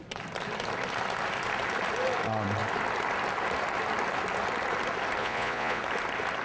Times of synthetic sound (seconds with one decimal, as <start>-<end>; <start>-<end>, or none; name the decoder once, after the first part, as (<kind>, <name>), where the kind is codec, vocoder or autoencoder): 5.2-5.8 (vocoder, Vocos)